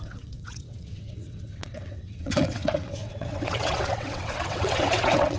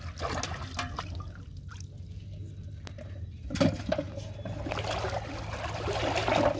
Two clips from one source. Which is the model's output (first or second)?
first